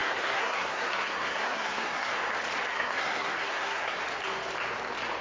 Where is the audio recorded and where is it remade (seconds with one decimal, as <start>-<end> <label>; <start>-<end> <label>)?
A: 0.0-2.2 remade; 2.2-2.7 recorded; 2.7-4.0 remade; 4.0-5.2 recorded